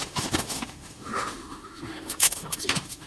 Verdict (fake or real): fake